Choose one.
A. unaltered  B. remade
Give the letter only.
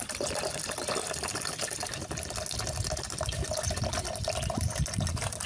A